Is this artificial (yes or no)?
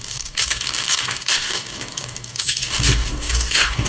yes